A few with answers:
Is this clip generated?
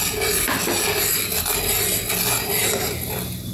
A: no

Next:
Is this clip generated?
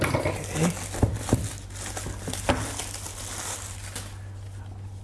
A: no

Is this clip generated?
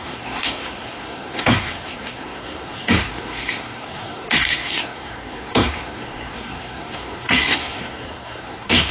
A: yes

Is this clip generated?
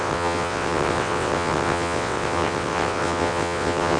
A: yes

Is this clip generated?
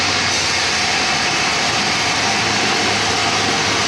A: no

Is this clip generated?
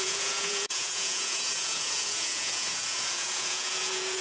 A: yes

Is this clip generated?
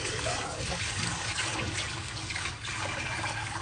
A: yes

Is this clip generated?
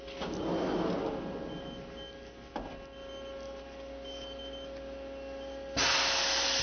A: no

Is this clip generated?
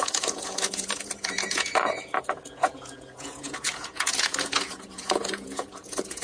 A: yes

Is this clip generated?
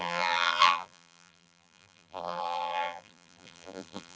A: yes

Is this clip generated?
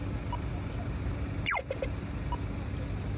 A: no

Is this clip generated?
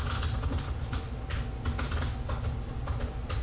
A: no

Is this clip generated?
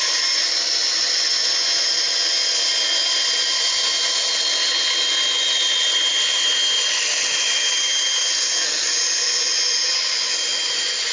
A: no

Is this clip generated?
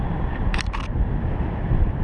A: yes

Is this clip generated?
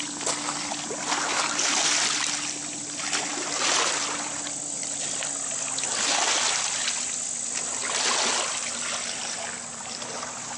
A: no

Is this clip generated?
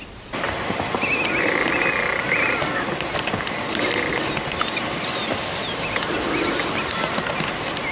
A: no